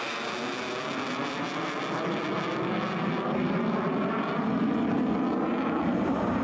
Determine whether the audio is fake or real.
real